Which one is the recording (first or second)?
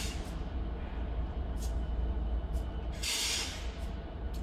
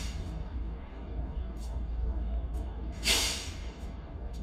first